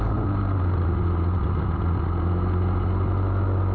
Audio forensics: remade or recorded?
recorded